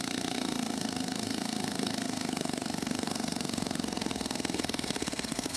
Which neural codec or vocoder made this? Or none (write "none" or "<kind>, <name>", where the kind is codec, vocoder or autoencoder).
codec, SNAC